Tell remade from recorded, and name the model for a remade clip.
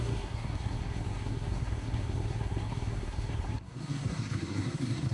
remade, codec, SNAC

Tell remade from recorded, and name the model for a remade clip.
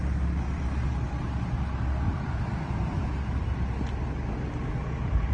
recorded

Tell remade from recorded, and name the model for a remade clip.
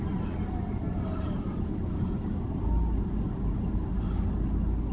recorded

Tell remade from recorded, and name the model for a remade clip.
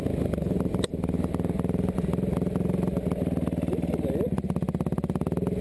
recorded